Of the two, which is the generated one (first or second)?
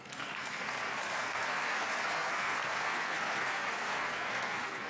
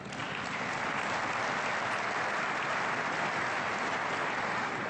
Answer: first